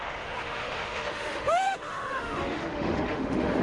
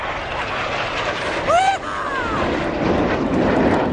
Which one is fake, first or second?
first